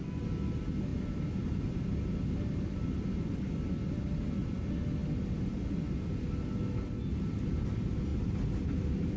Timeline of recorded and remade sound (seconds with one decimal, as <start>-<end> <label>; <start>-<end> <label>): 0.0-0.9 recorded; 0.9-1.8 remade; 1.8-8.1 recorded; 8.1-8.6 remade; 8.6-9.2 recorded